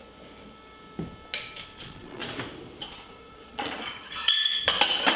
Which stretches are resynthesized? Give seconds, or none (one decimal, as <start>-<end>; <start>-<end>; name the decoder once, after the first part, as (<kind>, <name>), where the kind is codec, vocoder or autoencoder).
1.8-2.2 (vocoder, Vocos); 2.8-4.4

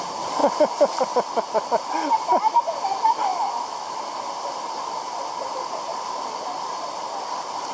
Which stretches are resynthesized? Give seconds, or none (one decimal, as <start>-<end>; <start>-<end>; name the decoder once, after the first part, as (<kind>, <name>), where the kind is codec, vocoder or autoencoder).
3.3-4.0 (autoencoder, DAC-VAE)

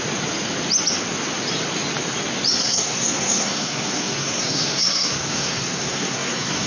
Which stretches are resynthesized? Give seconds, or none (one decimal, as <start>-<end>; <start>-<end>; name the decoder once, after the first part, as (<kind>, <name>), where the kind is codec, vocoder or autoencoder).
2.6-6.7 (codec, SNAC)

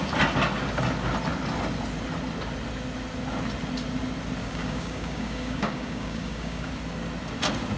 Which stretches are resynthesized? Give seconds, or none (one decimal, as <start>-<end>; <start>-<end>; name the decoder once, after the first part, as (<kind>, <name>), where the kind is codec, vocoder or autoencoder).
4.4-6.7 (codec, DAC)

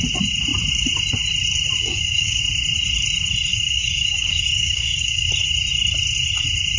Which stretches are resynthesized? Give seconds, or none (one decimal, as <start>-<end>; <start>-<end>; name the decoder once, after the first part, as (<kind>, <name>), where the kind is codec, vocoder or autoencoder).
1.8-2.4 (codec, DAC); 3.5-5.3

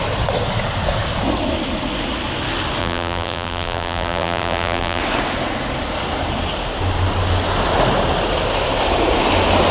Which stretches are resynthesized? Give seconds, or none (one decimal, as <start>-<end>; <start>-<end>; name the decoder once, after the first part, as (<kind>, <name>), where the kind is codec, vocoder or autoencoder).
2.8-5.0 (vocoder, BigVGAN v2)